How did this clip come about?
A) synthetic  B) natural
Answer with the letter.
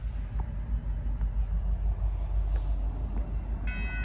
B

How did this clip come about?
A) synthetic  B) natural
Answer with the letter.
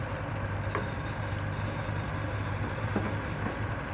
B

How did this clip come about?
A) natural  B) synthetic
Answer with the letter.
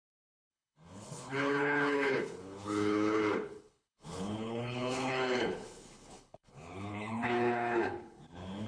B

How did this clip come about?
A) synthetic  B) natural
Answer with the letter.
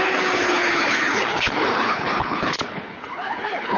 A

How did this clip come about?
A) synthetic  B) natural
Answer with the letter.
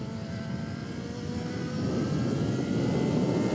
B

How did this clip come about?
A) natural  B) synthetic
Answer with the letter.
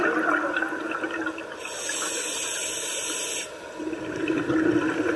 A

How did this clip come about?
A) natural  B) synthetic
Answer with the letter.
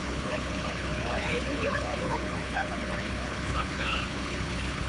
B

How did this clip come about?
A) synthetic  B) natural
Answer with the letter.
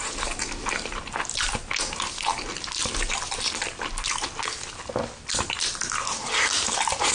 B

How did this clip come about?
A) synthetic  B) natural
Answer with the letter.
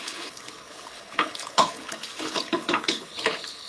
A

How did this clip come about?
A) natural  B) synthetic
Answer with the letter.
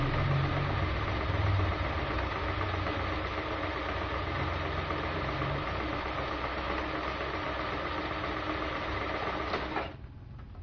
A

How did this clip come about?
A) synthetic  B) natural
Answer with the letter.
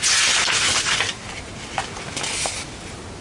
B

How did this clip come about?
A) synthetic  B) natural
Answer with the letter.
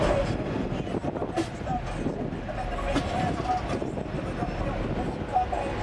B